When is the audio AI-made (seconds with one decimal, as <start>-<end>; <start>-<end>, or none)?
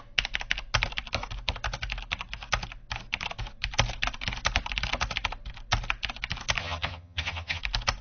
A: 6.6-7.6